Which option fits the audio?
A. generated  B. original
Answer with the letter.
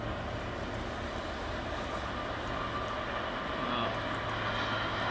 B